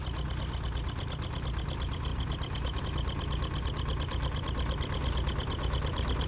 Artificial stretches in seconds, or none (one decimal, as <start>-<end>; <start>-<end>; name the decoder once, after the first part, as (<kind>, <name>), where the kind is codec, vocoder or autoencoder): 2.1-2.8 (vocoder, BigVGAN v2)